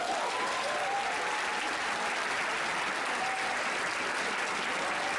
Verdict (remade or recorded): recorded